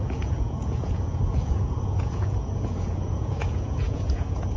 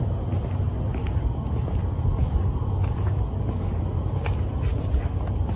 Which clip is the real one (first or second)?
second